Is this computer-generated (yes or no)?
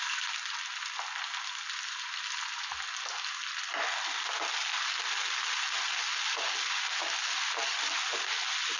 no